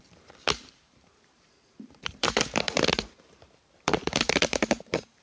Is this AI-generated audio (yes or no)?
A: yes